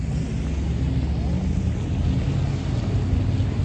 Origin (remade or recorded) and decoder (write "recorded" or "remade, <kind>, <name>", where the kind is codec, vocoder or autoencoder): recorded